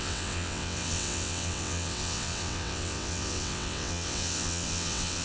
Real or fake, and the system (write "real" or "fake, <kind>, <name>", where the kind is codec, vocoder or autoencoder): fake, vocoder, WaveNeXt